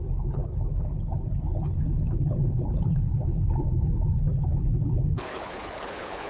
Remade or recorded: remade